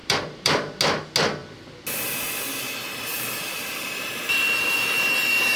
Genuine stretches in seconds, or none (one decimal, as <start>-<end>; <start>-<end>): 0.8-3.1; 4.2-5.6